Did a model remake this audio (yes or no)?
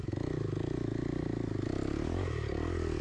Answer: no